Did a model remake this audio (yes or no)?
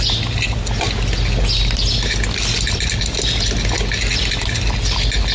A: no